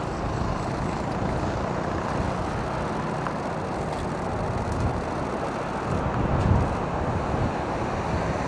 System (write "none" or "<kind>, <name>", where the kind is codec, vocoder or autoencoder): none